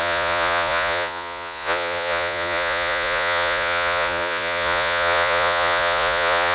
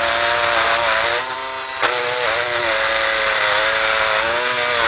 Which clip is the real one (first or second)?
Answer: second